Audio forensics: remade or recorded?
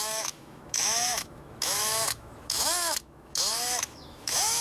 remade